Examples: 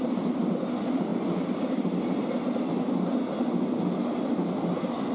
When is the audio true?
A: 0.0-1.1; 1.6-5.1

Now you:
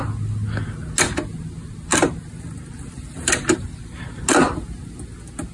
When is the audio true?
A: 0.0-1.9; 4.2-5.5

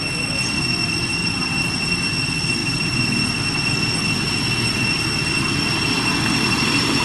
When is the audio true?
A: 0.0-1.2; 1.9-7.0

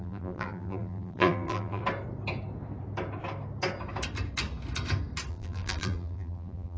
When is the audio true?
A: 1.8-5.3

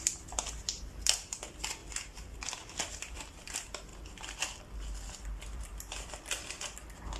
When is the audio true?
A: none